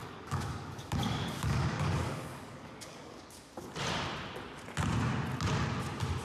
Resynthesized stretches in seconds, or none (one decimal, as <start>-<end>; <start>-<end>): 0.0-3.7